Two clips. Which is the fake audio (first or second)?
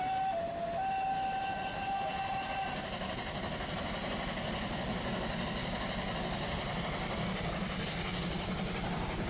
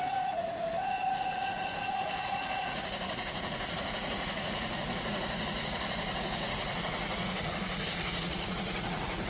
second